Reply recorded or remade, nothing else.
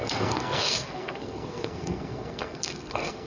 remade